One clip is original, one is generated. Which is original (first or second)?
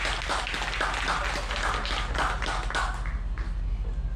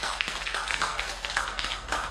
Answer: first